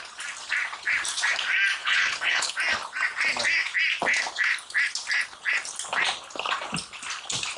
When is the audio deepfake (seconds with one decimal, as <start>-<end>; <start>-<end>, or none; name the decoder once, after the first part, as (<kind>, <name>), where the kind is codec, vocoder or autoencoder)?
1.8-2.5 (codec, HILCodec)